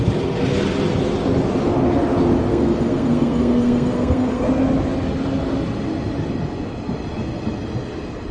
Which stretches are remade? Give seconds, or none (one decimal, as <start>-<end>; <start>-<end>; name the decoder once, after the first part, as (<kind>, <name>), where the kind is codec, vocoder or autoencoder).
2.5-4.5 (codec, SNAC)